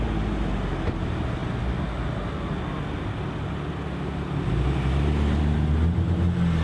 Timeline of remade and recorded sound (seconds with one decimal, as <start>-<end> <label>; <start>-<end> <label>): 0.0-6.6 recorded